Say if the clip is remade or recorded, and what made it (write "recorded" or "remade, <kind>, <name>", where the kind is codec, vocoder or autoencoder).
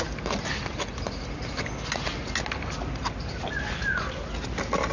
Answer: recorded